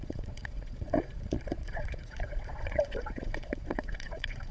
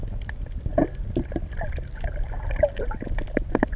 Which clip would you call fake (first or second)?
first